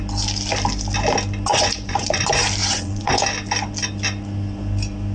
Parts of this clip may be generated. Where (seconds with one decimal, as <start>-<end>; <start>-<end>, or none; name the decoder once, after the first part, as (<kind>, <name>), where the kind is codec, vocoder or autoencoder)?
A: 1.5-2.2 (vocoder, Vocos); 2.6-3.2